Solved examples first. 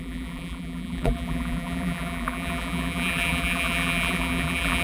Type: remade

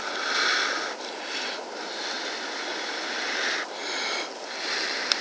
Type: recorded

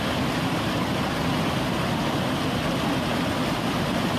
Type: recorded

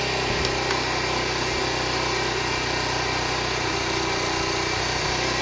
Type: recorded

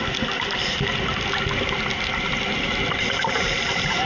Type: recorded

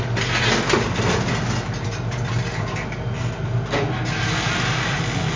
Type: recorded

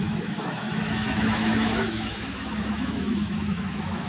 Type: remade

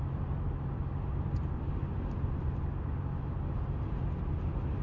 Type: recorded